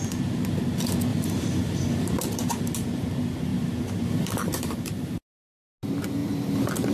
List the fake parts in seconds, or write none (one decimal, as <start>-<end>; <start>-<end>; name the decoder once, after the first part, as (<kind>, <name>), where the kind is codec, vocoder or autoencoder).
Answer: 1.1-3.1 (vocoder, BigVGAN v2); 3.5-5.2